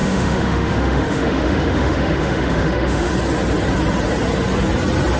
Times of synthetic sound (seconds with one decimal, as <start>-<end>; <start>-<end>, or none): 0.0-3.1